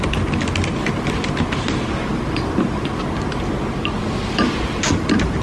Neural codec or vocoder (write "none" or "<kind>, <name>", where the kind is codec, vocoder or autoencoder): none